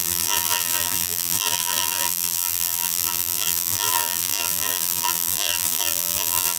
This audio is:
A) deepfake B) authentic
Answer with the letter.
A